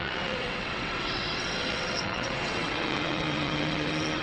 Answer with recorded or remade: remade